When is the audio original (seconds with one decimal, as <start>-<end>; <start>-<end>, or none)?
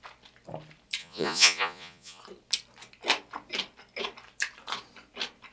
0.0-1.0; 2.2-5.5